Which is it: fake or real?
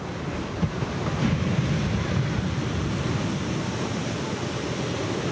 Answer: real